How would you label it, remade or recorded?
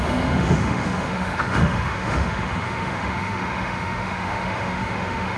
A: remade